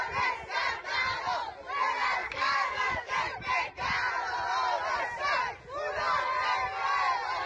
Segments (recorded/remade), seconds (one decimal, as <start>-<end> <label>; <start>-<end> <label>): 0.0-2.2 recorded; 2.2-3.1 remade; 3.1-7.5 recorded